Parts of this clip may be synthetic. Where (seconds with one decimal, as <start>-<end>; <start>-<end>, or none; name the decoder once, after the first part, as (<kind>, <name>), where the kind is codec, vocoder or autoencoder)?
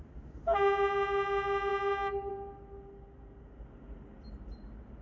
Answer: none